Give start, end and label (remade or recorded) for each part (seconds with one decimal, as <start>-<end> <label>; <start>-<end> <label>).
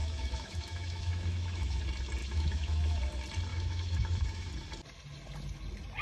0.0-1.8 remade; 1.8-2.2 recorded; 2.2-3.0 remade; 3.0-3.5 recorded; 3.5-4.5 remade; 4.5-6.0 recorded